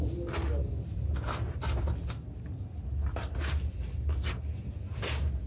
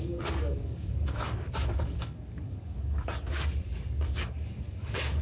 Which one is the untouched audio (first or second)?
first